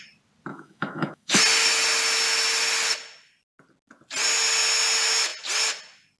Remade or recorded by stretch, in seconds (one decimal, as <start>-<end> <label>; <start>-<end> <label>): 0.0-0.5 recorded; 0.5-1.4 remade; 1.4-6.2 recorded